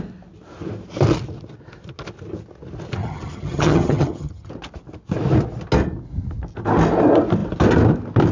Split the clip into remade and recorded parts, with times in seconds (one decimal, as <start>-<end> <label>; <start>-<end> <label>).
0.0-3.0 recorded; 3.0-4.5 remade; 4.5-8.3 recorded